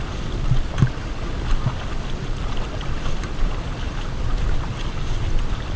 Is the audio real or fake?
real